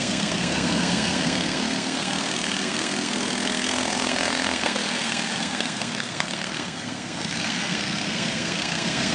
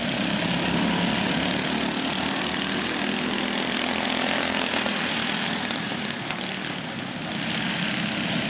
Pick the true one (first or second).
second